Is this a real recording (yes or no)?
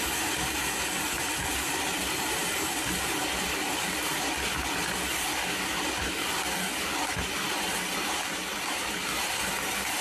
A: yes